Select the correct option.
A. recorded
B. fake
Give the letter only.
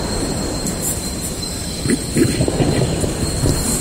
B